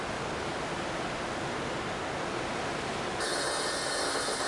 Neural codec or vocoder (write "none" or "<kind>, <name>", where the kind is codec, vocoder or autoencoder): none